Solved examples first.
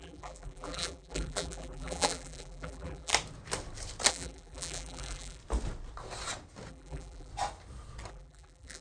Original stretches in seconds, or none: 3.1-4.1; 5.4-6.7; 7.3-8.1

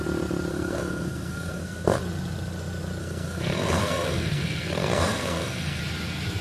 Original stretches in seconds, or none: 0.0-0.5; 2.0-3.0; 5.8-6.4

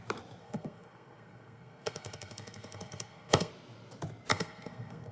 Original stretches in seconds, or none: 0.0-0.4; 3.5-4.3

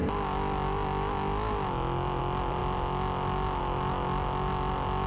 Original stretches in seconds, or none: 0.0-5.1

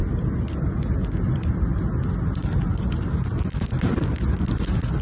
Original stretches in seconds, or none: 0.0-5.0

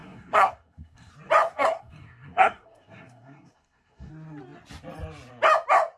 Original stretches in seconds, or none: 1.1-1.5; 4.1-6.0